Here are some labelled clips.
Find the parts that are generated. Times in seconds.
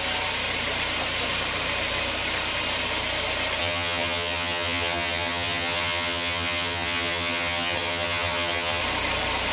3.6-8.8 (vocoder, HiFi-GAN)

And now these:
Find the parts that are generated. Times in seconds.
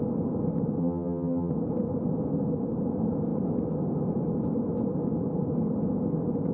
0.8-1.5 (vocoder, HiFi-GAN)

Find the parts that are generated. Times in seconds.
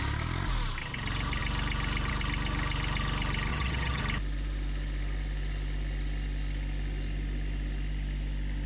3.5-4.0 (vocoder, HiFi-GAN)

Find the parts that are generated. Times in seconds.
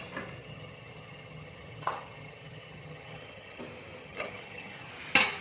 0.4-3.6 (vocoder, HiFi-GAN); 4.0-4.9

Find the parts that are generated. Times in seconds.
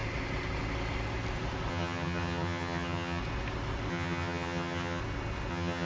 1.7-3.2 (vocoder, HiFi-GAN); 3.9-5.0; 5.5-5.9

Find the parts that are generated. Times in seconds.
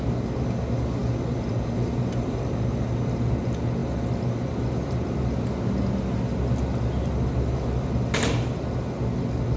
none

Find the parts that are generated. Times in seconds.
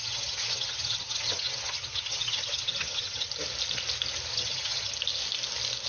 0.0-3.3 (vocoder, HiFi-GAN); 4.3-4.9